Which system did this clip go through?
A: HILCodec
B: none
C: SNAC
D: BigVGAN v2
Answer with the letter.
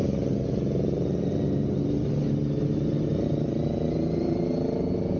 B